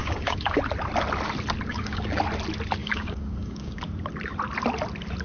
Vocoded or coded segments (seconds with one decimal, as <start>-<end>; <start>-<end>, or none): 0.0-0.6; 1.7-2.2; 2.8-3.8